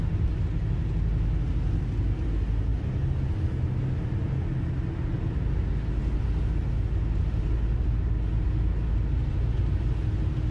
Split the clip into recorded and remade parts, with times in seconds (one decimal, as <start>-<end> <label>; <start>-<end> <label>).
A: 0.0-10.5 recorded